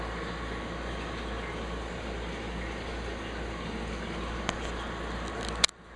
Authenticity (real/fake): real